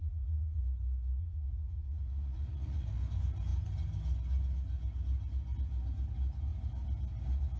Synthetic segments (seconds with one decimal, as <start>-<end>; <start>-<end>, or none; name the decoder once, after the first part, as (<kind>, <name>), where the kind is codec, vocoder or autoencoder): 0.0-0.6 (vocoder, Vocos); 1.2-3.0